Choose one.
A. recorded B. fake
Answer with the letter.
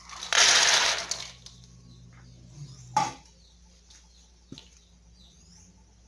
A